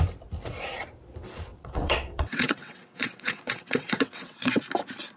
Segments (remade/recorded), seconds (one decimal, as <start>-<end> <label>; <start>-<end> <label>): 0.0-1.5 recorded; 1.5-4.6 remade; 4.6-5.2 recorded